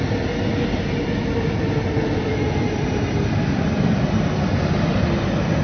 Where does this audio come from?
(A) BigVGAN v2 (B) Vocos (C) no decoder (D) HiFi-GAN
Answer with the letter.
C